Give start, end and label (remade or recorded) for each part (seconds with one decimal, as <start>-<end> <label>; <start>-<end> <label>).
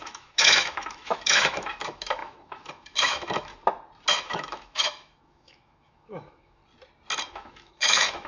0.0-3.5 remade; 3.5-4.1 recorded; 4.1-6.6 remade; 6.6-7.3 recorded; 7.3-8.3 remade